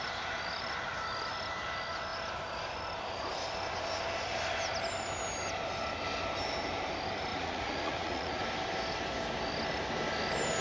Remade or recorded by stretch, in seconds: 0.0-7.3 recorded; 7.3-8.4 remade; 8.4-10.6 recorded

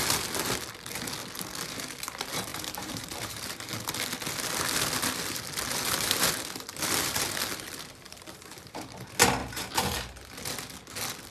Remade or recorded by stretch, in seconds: 0.0-2.5 recorded; 2.5-3.7 remade; 3.7-9.4 recorded; 9.4-10.0 remade; 10.0-11.3 recorded

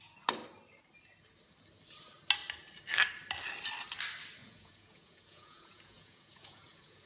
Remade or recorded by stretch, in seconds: 0.0-4.4 recorded; 4.4-7.1 remade

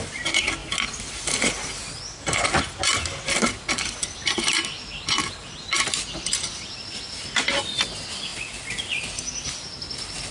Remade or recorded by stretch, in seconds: 0.0-10.3 recorded

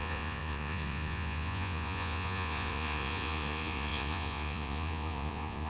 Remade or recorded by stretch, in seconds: 0.0-5.7 remade

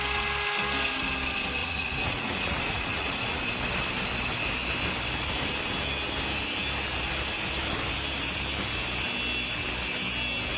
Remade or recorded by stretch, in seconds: 0.0-1.6 recorded; 1.6-3.4 remade; 3.4-10.6 recorded

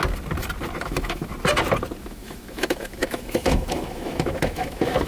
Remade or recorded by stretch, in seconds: 0.0-0.8 recorded; 0.8-1.3 remade; 1.3-2.0 recorded; 2.0-5.1 remade